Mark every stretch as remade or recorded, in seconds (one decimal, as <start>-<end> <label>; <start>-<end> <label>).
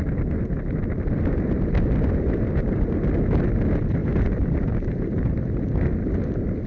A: 0.0-2.6 recorded; 2.6-3.1 remade; 3.1-4.0 recorded; 4.0-5.4 remade; 5.4-6.7 recorded